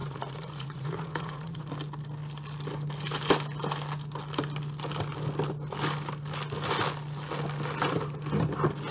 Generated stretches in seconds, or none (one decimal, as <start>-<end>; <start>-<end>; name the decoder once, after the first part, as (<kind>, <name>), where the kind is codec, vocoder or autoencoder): 0.0-1.7 (vocoder, Vocos)